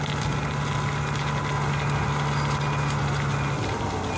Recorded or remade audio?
recorded